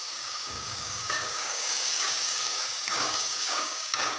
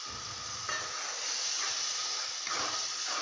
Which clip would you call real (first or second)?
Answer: second